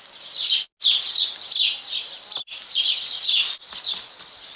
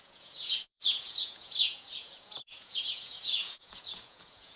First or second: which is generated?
second